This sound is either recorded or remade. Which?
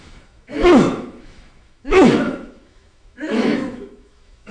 remade